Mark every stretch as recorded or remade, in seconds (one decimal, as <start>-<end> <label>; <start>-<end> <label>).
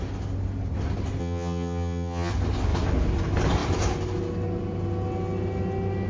0.0-1.2 recorded; 1.2-2.3 remade; 2.3-6.1 recorded